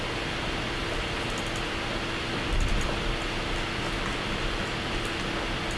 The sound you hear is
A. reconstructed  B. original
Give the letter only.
B